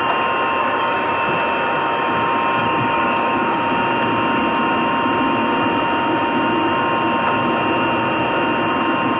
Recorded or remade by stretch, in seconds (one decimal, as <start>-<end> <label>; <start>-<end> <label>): 0.0-0.6 recorded; 0.6-1.1 remade; 1.1-2.6 recorded; 2.6-3.6 remade; 3.6-9.2 recorded